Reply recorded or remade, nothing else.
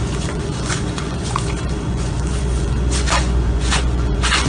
remade